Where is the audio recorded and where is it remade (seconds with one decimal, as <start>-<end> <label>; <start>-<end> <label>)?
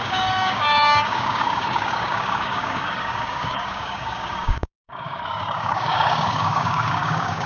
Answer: 0.0-7.5 remade